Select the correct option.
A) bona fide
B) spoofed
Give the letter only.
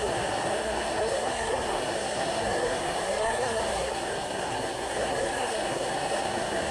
B